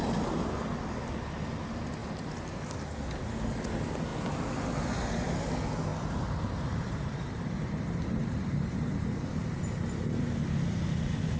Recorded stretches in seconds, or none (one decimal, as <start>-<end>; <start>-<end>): 0.0-5.9; 9.4-11.4